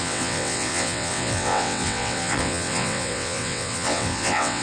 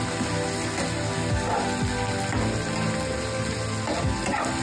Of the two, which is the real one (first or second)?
second